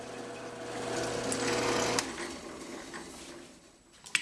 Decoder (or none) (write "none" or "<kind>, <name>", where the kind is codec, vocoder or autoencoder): none